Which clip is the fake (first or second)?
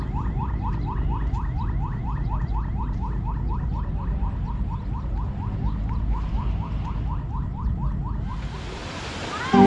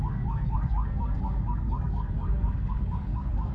second